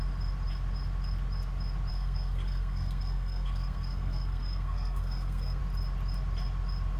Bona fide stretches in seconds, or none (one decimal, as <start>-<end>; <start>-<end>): 0.0-1.9; 5.6-7.0